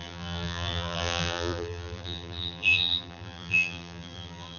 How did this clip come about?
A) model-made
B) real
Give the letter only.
A